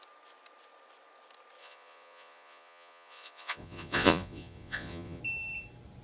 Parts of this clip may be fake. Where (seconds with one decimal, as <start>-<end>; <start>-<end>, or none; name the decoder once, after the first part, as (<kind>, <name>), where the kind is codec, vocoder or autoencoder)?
1.6-5.2 (vocoder, Vocos)